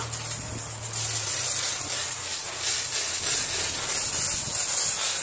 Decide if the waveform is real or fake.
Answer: real